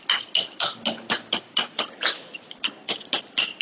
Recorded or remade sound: recorded